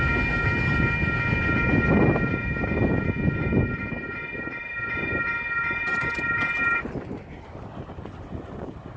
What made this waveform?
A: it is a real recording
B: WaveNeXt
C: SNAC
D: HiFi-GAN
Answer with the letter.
A